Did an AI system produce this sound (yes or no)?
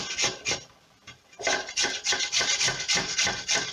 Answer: no